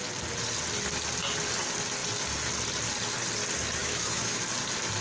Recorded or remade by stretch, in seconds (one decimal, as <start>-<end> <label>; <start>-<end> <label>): 0.0-3.8 recorded; 3.8-4.4 remade; 4.4-5.0 recorded